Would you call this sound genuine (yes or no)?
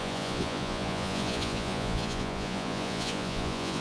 no